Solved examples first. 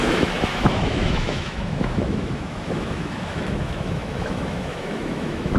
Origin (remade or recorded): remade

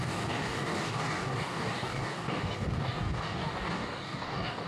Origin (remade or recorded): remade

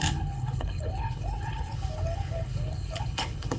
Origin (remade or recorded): remade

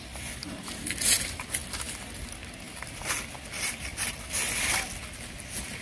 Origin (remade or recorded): recorded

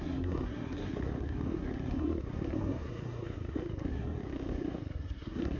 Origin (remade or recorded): remade